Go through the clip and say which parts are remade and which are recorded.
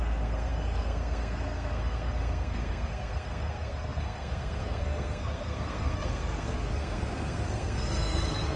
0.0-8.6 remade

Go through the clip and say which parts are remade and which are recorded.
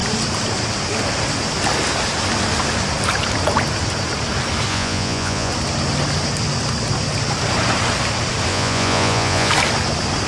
0.0-4.7 recorded; 4.7-5.5 remade; 5.5-8.5 recorded; 8.5-9.5 remade; 9.5-10.3 recorded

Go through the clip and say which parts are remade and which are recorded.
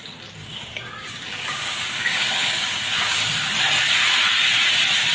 0.0-0.4 recorded; 0.4-3.5 remade; 3.5-5.1 recorded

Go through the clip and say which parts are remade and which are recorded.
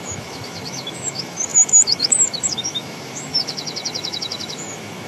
0.0-5.1 remade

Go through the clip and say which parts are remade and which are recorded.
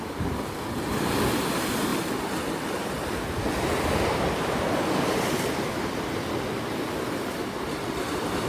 0.0-8.5 recorded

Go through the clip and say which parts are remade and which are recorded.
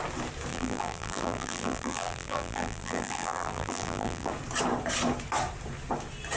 0.0-0.5 recorded; 0.5-4.3 remade; 4.3-6.4 recorded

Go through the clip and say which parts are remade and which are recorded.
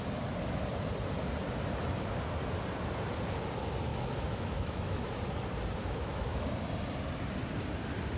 0.0-3.9 recorded; 3.9-5.0 remade; 5.0-5.8 recorded; 5.8-6.4 remade; 6.4-8.2 recorded